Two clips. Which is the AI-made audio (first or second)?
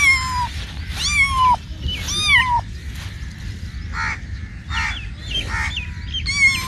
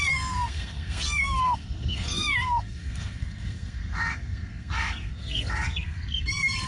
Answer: second